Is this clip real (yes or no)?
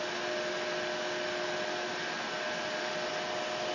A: yes